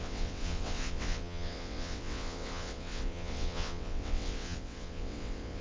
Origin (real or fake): fake